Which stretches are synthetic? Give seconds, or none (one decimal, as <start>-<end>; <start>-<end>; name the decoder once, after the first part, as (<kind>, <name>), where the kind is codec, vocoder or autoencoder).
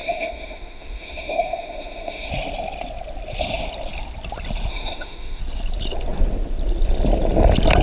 0.0-2.3 (autoencoder, DAC-VAE); 4.7-5.4